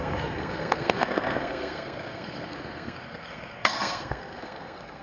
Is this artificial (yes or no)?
yes